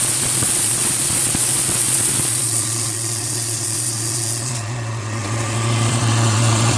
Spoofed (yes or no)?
yes